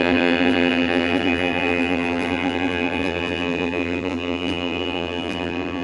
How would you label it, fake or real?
fake